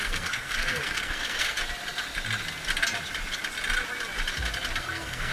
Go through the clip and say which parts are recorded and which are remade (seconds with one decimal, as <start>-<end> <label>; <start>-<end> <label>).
0.0-1.6 remade; 1.6-4.8 recorded; 4.8-5.3 remade